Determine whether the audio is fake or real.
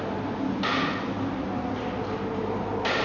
real